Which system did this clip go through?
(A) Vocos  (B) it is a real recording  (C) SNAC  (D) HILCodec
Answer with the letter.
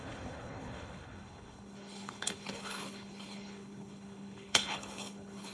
D